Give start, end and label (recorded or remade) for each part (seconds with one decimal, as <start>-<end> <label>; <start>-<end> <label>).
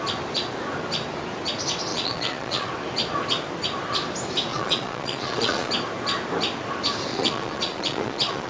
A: 0.0-1.9 recorded; 1.9-2.7 remade; 2.7-4.5 recorded; 4.5-5.7 remade; 5.7-7.1 recorded; 7.1-8.5 remade